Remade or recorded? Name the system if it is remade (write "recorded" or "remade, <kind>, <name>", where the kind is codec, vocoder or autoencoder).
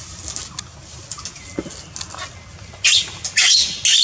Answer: recorded